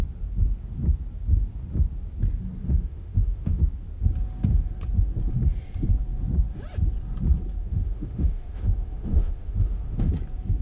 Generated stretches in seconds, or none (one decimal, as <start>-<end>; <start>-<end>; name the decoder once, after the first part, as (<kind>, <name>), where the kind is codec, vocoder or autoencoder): 2.6-3.6 (autoencoder, DAC-VAE); 7.6-10.1